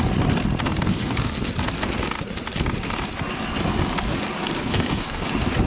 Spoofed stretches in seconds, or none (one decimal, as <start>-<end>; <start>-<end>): 0.9-1.5; 4.7-5.3